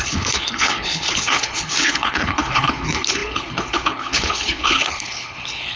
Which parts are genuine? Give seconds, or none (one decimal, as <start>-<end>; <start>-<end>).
none